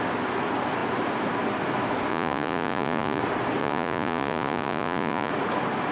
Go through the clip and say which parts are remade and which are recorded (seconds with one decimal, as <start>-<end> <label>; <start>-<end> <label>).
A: 0.0-2.1 recorded; 2.1-3.2 remade; 3.2-3.6 recorded; 3.6-5.3 remade; 5.3-5.9 recorded